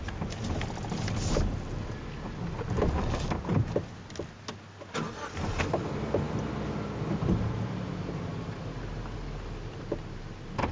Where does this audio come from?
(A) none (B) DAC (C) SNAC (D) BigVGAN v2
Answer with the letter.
A